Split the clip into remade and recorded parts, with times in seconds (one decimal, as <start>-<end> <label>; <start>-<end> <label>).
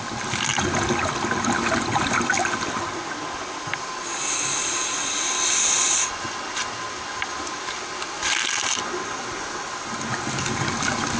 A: 0.0-11.2 recorded